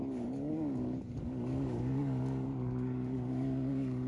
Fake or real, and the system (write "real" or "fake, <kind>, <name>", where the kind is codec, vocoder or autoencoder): fake, codec, DAC